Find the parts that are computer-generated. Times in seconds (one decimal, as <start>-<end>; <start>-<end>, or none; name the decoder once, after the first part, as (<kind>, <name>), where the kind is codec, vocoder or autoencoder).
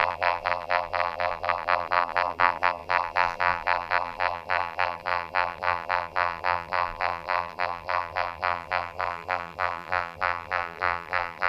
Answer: 0.0-11.5 (vocoder, BigVGAN v2)